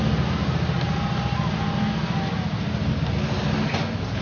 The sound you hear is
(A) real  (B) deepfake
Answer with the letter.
A